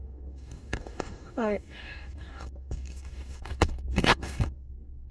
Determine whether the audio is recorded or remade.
remade